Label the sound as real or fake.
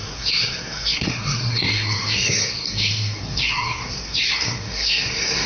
fake